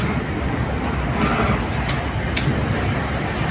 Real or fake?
real